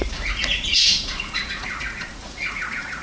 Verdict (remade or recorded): remade